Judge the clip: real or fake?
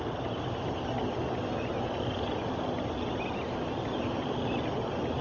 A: real